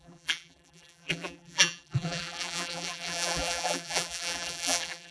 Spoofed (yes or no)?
yes